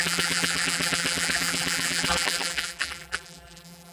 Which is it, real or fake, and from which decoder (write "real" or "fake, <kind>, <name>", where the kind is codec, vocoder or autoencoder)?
fake, vocoder, BigVGAN v2